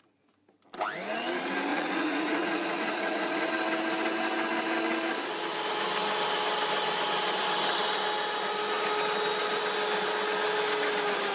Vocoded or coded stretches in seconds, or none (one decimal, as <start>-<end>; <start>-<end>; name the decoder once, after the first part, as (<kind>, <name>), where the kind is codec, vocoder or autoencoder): 1.7-3.5 (vocoder, Vocos)